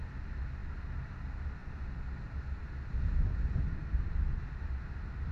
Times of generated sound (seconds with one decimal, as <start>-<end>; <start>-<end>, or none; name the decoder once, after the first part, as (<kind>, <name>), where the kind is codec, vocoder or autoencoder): none